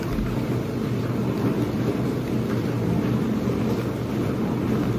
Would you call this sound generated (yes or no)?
no